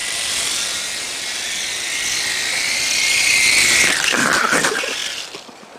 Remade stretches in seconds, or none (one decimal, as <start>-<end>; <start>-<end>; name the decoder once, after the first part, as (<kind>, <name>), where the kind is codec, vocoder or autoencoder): none